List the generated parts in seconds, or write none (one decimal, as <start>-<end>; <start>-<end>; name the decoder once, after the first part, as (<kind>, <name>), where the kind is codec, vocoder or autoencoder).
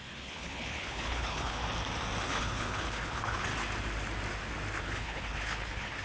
0.0-1.6 (codec, HILCodec); 2.2-3.5; 4.8-6.0